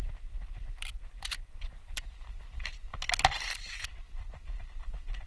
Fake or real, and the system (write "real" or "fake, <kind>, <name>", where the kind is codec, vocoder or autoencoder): real